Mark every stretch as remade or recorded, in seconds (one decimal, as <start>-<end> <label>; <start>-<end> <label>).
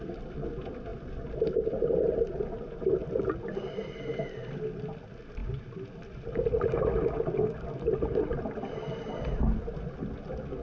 0.0-10.6 recorded